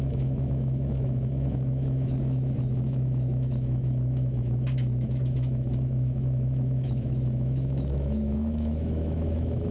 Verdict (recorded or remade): remade